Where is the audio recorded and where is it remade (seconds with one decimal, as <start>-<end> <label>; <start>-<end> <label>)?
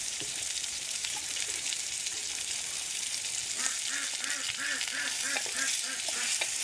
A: 0.0-2.2 remade; 2.2-6.1 recorded; 6.1-6.6 remade